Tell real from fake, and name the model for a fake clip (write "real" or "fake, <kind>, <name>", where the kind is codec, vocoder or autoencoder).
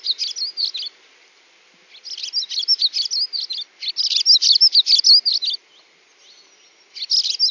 real